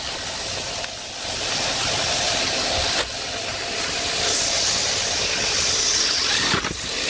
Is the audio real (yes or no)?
yes